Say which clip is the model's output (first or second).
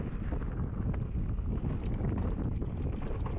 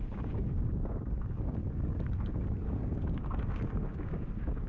second